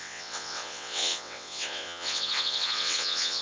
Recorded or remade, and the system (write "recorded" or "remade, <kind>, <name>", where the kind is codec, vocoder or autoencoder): remade, vocoder, WaveNeXt